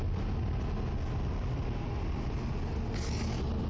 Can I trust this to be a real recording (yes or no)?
yes